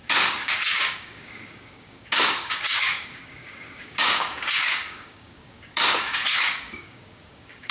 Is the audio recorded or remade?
remade